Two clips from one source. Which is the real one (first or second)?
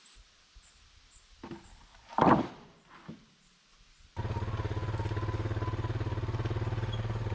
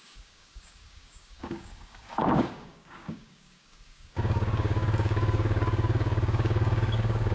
first